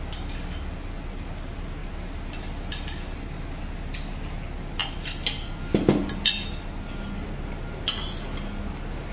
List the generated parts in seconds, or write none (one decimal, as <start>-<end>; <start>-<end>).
none

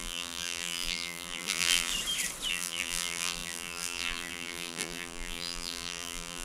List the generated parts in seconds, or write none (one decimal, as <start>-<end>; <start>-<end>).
0.0-1.9; 2.5-6.4

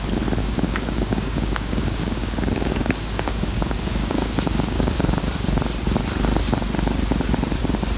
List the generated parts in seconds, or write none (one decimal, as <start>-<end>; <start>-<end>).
0.4-5.2

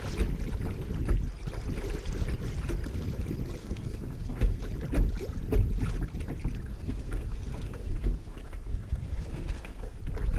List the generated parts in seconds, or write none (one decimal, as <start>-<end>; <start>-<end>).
3.6-4.6; 6.7-10.0

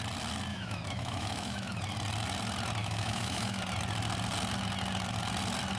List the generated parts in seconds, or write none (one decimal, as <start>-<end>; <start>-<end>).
0.5-1.8; 2.8-3.6

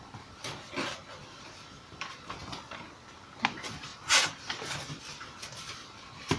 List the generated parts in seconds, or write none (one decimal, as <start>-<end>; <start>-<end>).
none